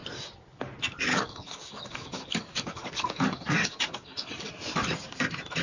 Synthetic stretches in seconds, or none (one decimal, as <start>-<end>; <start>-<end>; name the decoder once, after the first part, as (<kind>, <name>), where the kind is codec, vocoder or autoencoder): 1.1-4.5 (codec, DAC)